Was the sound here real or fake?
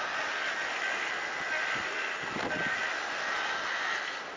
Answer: real